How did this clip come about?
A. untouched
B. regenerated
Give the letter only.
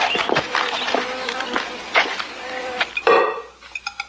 A